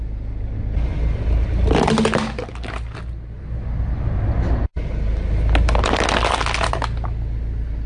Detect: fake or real real